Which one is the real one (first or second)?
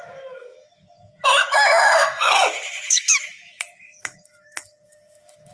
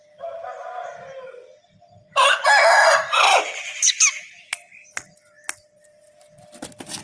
second